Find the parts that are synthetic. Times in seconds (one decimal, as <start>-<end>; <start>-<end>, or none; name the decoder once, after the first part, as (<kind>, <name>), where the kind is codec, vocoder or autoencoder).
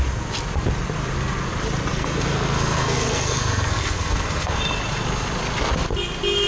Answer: 1.9-4.6 (codec, SNAC)